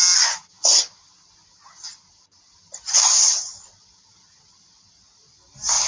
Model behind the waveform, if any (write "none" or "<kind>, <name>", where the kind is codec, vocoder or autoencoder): none